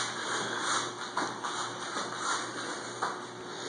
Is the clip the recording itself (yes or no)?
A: yes